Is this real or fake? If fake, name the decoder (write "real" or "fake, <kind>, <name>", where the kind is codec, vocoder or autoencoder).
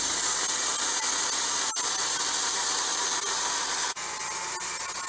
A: real